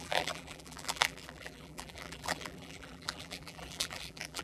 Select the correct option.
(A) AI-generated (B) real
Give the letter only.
A